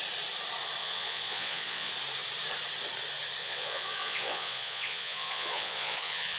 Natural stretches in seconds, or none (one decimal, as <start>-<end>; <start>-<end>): 0.0-0.8; 1.9-3.4